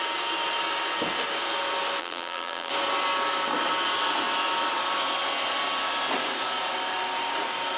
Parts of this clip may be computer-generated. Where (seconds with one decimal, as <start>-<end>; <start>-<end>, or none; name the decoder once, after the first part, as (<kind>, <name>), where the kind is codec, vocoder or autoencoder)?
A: 2.0-2.7 (vocoder, BigVGAN v2)

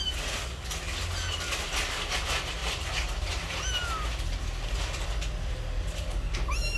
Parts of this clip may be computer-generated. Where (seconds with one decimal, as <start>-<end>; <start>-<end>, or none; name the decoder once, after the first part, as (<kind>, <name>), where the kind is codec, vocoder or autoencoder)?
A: none

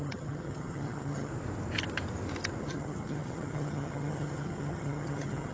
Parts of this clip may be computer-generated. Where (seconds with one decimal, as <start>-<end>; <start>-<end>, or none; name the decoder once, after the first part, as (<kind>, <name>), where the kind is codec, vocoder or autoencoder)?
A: 0.0-1.3 (vocoder, HiFi-GAN); 2.6-5.5

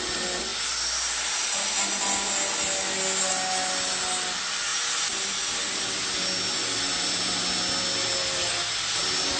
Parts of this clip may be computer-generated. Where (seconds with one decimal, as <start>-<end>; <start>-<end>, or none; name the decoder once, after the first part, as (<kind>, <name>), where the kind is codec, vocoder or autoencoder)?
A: none